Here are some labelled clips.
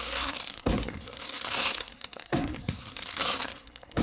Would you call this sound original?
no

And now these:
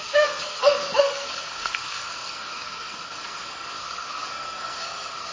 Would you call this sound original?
no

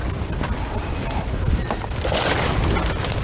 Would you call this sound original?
yes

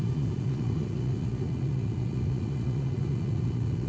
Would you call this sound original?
no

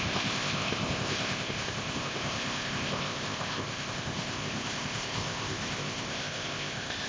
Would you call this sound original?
no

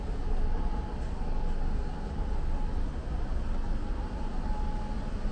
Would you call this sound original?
yes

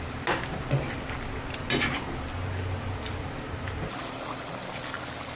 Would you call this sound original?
yes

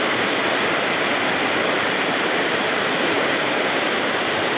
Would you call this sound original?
yes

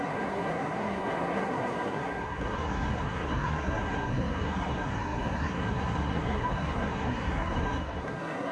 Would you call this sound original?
no